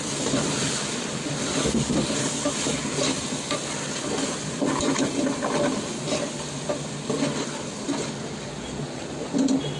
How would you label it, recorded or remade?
recorded